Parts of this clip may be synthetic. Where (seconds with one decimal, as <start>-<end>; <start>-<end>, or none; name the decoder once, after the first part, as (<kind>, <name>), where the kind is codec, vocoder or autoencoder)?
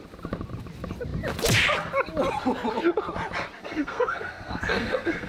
3.6-5.3 (codec, SNAC)